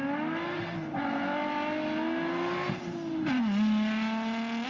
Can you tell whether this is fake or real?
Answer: real